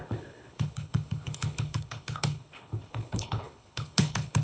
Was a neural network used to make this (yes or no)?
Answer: yes